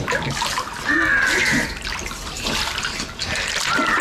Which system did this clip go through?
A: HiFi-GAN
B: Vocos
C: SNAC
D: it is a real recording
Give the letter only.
D